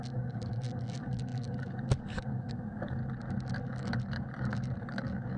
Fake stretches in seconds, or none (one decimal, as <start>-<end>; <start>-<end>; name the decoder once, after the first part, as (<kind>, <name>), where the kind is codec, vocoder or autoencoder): 0.0-3.0 (codec, DAC); 3.6-5.4